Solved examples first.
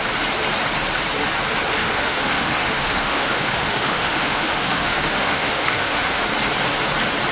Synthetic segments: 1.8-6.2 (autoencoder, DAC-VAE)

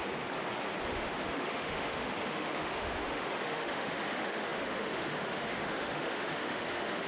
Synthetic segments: 0.9-7.1 (autoencoder, DAC-VAE)